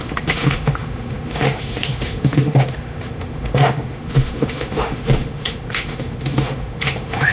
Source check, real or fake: fake